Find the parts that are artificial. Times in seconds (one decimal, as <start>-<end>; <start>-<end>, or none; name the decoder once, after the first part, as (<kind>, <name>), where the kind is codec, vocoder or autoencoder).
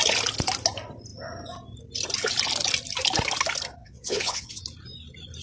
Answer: 3.8-4.6 (vocoder, WaveNeXt)